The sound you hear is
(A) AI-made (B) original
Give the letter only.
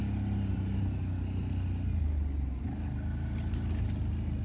B